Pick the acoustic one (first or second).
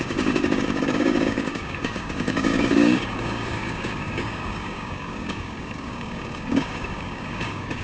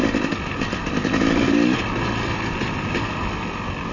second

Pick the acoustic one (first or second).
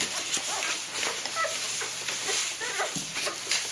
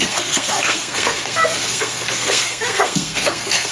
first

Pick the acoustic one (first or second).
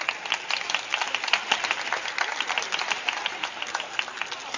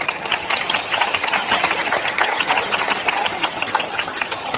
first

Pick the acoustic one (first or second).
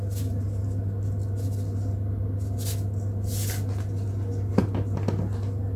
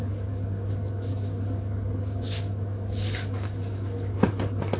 first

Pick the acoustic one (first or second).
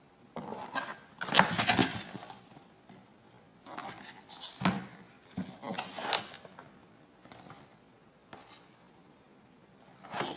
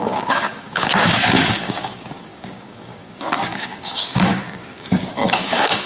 first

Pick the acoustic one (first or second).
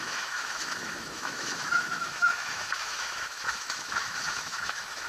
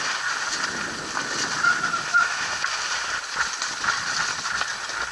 second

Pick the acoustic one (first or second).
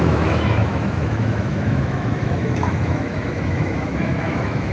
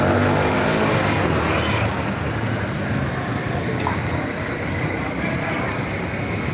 second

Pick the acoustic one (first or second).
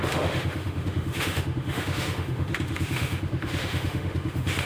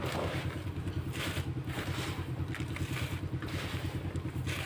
second